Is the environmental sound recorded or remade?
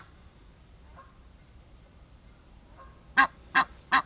remade